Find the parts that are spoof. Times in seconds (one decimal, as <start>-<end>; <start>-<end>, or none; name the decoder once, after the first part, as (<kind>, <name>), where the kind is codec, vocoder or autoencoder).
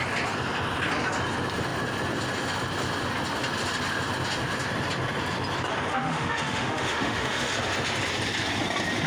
5.9-7.5 (autoencoder, DAC-VAE)